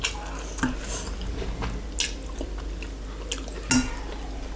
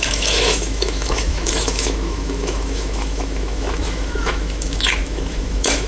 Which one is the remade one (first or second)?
second